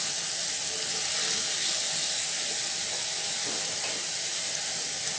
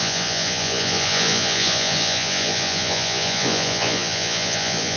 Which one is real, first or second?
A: first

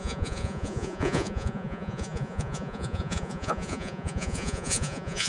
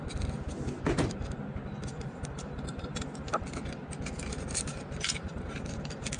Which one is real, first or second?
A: second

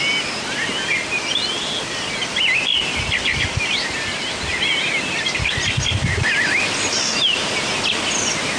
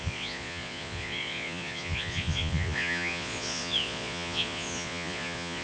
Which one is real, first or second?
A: first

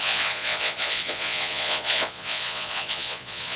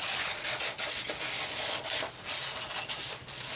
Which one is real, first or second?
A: second